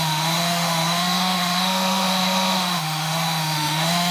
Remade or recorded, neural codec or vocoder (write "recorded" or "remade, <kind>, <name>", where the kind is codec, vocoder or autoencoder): remade, autoencoder, DAC-VAE